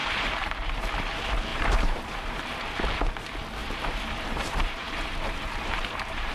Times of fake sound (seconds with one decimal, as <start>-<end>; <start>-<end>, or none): 0.0-0.9; 1.5-2.4; 3.6-6.3